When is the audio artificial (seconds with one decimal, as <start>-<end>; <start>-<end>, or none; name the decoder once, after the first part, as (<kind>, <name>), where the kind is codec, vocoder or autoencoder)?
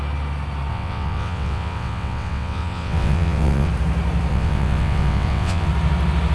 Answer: 0.7-3.7 (vocoder, WaveNeXt); 4.3-5.7